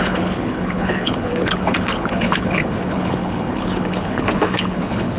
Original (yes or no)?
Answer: no